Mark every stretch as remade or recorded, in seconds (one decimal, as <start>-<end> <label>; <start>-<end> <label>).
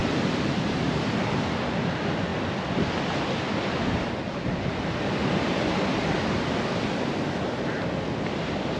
0.0-8.8 recorded